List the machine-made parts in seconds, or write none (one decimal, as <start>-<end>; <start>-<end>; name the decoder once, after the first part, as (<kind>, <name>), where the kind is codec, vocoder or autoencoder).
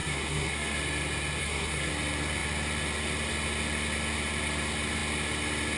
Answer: 0.0-0.8 (codec, SNAC); 1.4-1.9